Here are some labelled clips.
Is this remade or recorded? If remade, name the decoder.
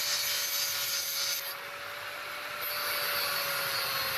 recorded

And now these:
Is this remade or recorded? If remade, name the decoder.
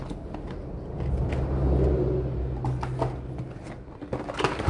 recorded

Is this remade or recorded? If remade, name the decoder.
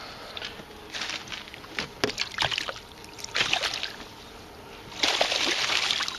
recorded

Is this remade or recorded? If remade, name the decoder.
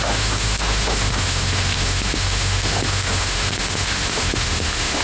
remade, autoencoder, DAC-VAE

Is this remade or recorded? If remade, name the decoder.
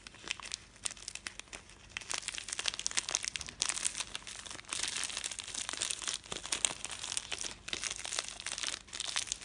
recorded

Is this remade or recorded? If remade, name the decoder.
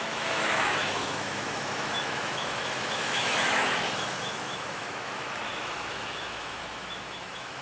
remade, autoencoder, DAC-VAE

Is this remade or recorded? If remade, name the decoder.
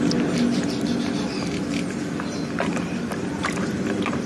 recorded